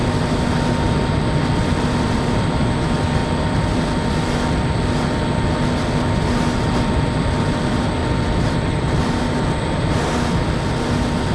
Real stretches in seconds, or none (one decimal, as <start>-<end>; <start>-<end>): 0.0-8.0; 9.2-11.3

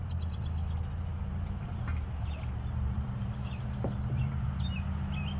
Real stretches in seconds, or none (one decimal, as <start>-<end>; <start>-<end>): 0.0-1.1; 4.3-5.4

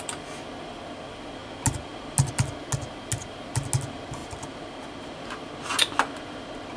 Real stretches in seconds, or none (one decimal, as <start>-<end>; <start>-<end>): 0.0-6.8

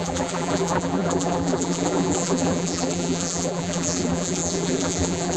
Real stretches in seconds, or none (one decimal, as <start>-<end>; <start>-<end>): none

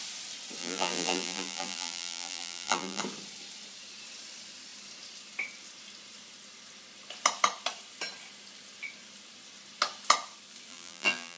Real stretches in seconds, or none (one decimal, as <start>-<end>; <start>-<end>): 0.0-0.6; 3.0-10.7

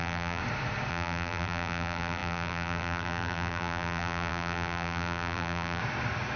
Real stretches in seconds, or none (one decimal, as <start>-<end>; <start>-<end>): 0.4-0.9; 5.8-6.4

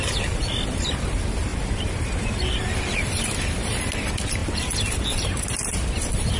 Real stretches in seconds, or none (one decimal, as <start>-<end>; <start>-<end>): 1.5-2.4